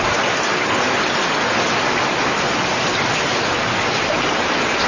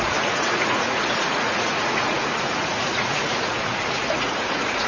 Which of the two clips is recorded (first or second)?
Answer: first